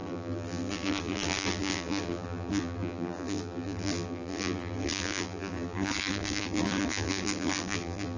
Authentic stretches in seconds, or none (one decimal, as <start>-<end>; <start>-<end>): none